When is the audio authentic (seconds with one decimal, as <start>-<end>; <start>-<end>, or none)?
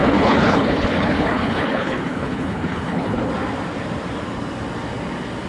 3.3-5.5